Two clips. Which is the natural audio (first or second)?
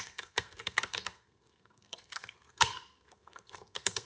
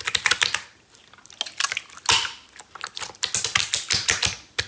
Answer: second